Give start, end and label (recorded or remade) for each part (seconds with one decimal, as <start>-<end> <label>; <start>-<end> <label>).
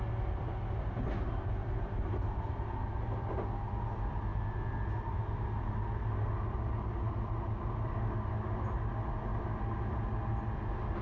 0.0-1.6 recorded; 1.6-3.0 remade; 3.0-11.0 recorded